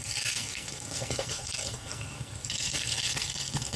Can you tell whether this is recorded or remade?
remade